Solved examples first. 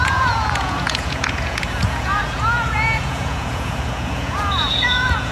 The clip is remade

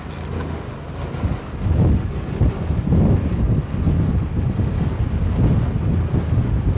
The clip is recorded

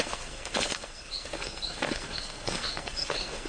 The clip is remade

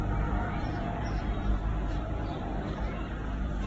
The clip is remade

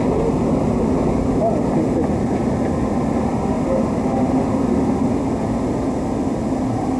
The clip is recorded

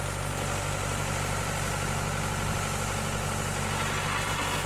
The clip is recorded